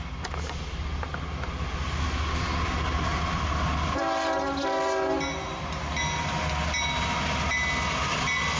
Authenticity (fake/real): real